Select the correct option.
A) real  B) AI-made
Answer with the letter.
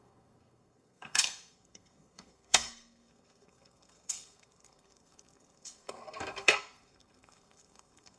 B